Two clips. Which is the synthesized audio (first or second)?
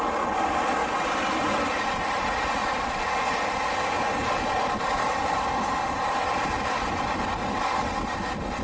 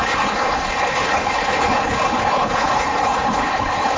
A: second